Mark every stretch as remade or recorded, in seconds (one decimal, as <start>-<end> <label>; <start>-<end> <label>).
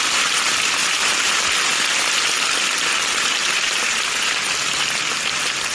0.0-0.8 recorded; 0.8-1.3 remade; 1.3-3.4 recorded; 3.4-4.3 remade; 4.3-5.7 recorded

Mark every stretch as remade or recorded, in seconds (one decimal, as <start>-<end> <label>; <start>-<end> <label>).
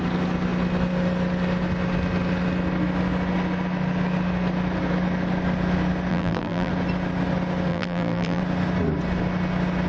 0.0-6.1 recorded; 6.1-6.7 remade; 6.7-7.7 recorded; 7.7-8.4 remade; 8.4-9.9 recorded